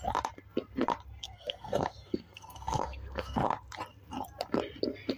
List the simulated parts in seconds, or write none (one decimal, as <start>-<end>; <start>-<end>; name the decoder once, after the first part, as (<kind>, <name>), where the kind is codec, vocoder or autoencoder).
1.2-3.5 (codec, SNAC)